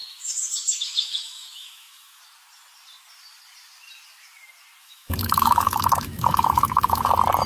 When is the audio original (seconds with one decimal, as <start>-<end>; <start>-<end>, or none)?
2.2-4.8; 7.1-7.5